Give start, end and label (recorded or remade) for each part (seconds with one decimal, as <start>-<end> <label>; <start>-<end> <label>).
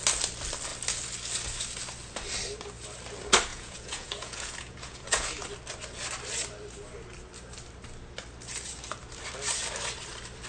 0.0-3.5 recorded; 3.5-5.3 remade; 5.3-10.5 recorded